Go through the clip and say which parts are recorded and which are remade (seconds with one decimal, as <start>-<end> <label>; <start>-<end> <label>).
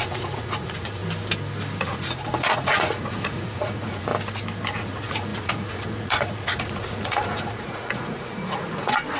0.0-1.0 remade; 1.0-1.8 recorded; 1.8-4.1 remade; 4.1-4.7 recorded; 4.7-9.2 remade